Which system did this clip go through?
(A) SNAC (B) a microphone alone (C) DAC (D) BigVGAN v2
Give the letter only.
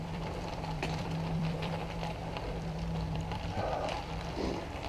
D